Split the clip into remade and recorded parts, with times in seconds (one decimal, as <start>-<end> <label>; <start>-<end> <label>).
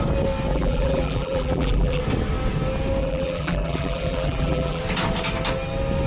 0.0-0.5 recorded; 0.5-2.0 remade; 2.0-3.0 recorded; 3.0-4.8 remade; 4.8-6.1 recorded